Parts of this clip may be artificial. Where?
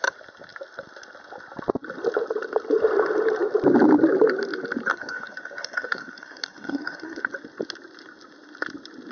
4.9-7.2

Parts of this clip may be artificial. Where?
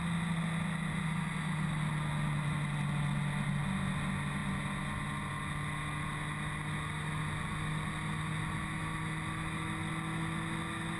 none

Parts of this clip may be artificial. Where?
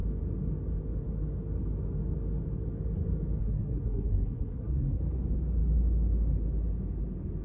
3.4-5.0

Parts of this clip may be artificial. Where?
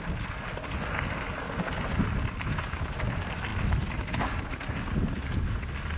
none